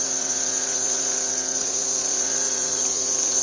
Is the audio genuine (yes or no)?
no